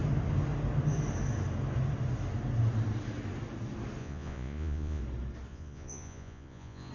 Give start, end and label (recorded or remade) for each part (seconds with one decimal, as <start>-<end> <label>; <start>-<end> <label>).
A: 0.0-4.0 recorded; 4.0-5.0 remade; 5.0-5.5 recorded; 5.5-6.9 remade